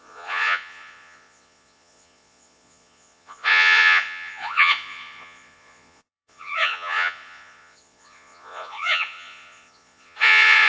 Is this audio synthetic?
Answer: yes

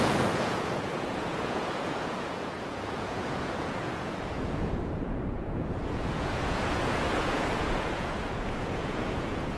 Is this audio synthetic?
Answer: yes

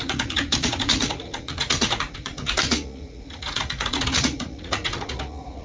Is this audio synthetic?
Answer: yes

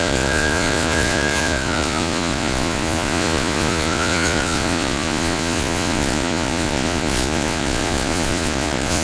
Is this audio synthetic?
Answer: yes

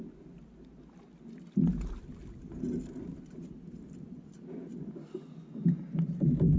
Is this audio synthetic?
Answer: no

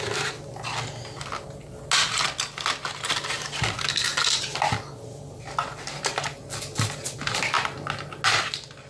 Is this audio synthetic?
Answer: no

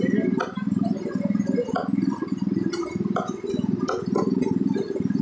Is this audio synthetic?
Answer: no